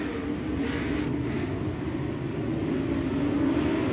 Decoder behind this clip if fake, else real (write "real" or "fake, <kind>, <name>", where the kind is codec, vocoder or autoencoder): real